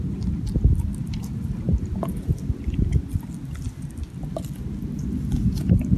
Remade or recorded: recorded